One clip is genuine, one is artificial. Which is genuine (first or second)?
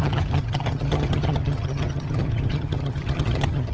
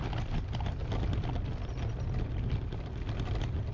second